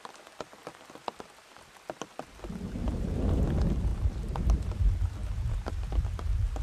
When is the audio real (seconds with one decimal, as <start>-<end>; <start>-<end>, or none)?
0.0-2.8; 3.4-3.9; 4.6-5.2; 6.0-6.6